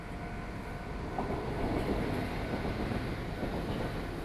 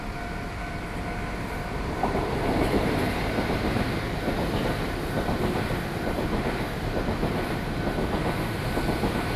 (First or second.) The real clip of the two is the first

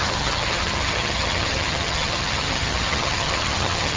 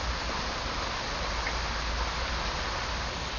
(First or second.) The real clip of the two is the second